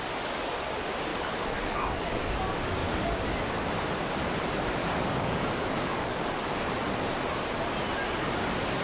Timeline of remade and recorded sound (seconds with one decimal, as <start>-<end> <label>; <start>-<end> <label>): 0.0-1.1 recorded; 1.1-2.2 remade; 2.2-4.8 recorded; 4.8-6.7 remade; 6.7-8.8 recorded